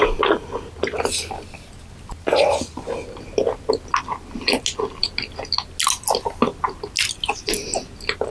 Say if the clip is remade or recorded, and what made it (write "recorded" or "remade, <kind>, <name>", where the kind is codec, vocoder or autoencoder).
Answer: recorded